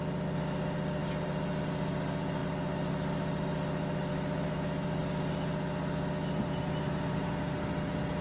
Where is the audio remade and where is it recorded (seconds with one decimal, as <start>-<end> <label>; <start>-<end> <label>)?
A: 0.0-4.1 recorded; 4.1-5.0 remade; 5.0-8.2 recorded